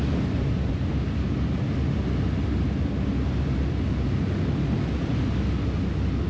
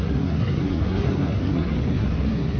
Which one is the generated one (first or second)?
second